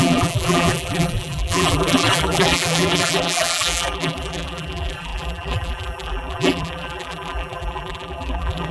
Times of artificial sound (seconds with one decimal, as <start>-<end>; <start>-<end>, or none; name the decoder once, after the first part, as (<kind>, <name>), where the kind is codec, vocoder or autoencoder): 0.0-8.7 (vocoder, BigVGAN v2)